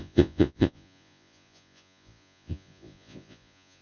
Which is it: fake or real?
fake